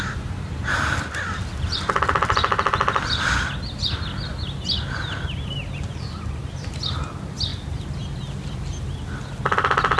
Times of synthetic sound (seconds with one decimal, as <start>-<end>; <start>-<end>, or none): none